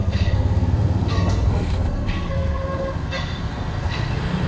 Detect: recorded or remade remade